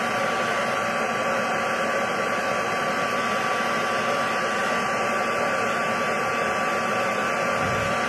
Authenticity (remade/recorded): recorded